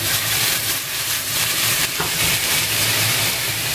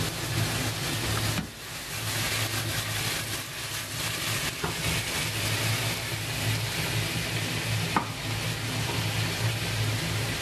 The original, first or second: second